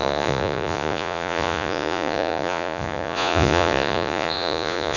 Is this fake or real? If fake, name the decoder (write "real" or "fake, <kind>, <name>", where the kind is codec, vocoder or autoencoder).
fake, vocoder, Vocos